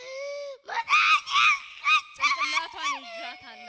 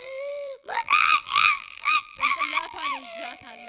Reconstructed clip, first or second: second